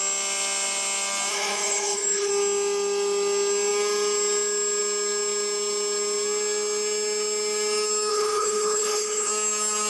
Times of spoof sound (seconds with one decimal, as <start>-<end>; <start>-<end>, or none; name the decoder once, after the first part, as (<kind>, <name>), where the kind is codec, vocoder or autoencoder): 1.3-2.3 (codec, HILCodec); 8.1-9.3